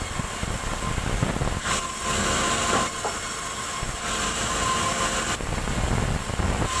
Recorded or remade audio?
recorded